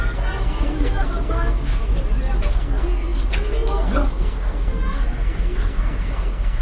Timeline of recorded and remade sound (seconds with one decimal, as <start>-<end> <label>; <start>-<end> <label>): 0.0-1.9 remade; 1.9-2.5 recorded; 2.5-6.6 remade